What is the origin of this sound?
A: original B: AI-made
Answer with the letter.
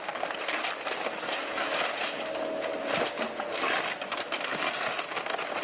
A